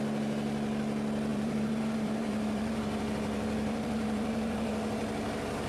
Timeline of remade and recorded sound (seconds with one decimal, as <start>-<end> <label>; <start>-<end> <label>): 0.0-1.3 recorded; 1.3-4.7 remade; 4.7-5.7 recorded